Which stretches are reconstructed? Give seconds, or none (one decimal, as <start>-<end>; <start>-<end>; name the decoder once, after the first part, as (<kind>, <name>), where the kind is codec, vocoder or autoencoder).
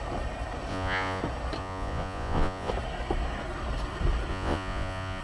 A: 0.7-1.2 (vocoder, Vocos); 1.6-2.7; 4.3-5.2